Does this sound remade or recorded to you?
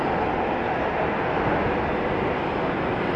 recorded